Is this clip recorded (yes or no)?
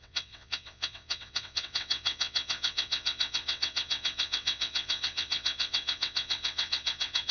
no